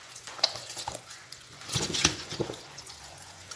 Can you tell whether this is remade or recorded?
remade